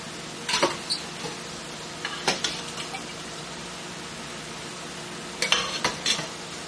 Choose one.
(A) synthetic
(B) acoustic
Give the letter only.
B